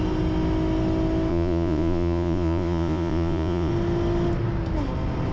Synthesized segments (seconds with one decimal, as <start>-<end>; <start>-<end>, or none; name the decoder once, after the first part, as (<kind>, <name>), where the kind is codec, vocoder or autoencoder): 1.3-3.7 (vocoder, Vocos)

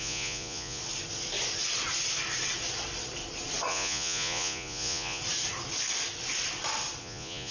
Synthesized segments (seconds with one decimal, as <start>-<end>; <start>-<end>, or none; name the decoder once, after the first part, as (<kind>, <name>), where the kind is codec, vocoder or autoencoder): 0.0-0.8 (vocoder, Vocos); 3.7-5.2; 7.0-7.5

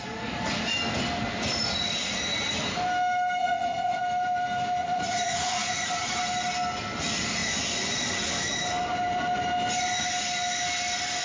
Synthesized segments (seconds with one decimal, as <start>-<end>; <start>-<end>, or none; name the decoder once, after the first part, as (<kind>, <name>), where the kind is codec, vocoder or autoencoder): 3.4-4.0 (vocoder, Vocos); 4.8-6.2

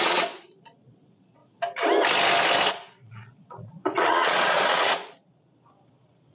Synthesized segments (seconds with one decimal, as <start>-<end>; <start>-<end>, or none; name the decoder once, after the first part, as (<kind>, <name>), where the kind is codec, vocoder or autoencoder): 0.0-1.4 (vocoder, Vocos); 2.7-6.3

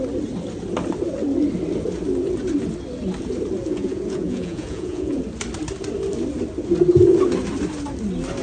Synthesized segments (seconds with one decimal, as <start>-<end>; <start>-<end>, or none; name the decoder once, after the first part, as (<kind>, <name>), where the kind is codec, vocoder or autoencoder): 3.6-5.2 (vocoder, Vocos)

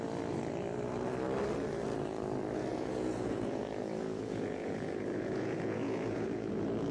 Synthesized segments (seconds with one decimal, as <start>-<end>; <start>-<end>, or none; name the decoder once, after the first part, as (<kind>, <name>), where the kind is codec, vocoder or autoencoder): 2.7-6.5 (vocoder, Vocos)